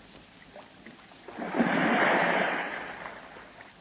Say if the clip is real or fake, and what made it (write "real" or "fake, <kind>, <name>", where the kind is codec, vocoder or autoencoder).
real